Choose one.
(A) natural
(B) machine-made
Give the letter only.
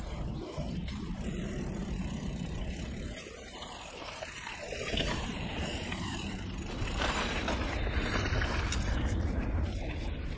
B